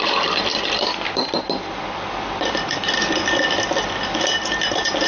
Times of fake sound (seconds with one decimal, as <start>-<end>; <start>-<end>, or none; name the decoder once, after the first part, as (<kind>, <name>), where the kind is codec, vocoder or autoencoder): 0.5-3.6 (vocoder, BigVGAN v2)